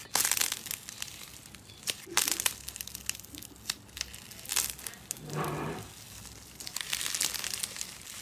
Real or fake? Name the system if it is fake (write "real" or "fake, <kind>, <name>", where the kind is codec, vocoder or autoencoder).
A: real